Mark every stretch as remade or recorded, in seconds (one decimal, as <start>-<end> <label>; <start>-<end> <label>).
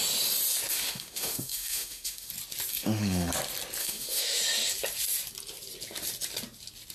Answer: 0.0-0.7 recorded; 0.7-2.3 remade; 2.3-2.7 recorded; 2.7-3.3 remade; 3.3-3.8 recorded; 3.8-4.4 remade; 4.4-6.9 recorded